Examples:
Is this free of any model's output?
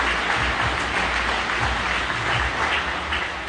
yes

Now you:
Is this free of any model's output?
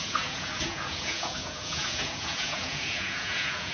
no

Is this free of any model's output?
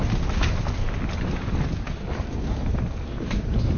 yes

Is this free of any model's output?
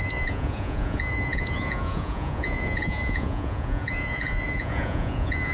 no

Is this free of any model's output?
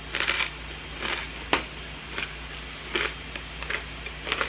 yes